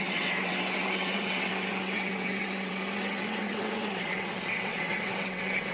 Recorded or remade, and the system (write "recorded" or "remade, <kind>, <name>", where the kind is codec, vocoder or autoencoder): remade, vocoder, WaveNeXt